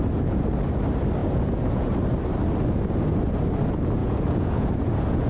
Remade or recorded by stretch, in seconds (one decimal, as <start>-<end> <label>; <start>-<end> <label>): 0.0-1.2 recorded; 1.2-1.9 remade; 1.9-4.0 recorded; 4.0-5.3 remade

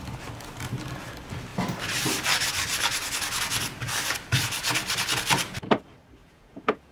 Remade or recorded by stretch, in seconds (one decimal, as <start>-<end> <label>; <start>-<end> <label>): 0.0-6.2 recorded; 6.2-6.9 remade

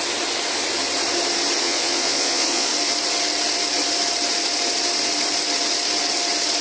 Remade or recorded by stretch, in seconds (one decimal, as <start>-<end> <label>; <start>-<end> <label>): 0.0-1.6 recorded; 1.6-2.7 remade; 2.7-6.6 recorded